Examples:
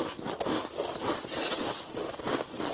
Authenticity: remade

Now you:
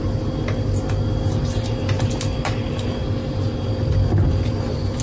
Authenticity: recorded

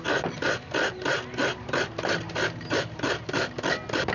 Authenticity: recorded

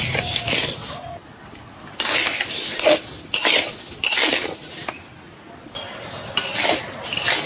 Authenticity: recorded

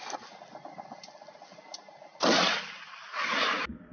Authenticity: recorded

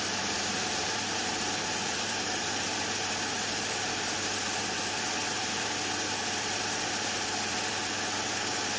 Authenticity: remade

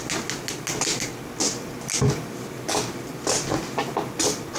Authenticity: recorded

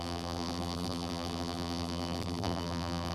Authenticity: remade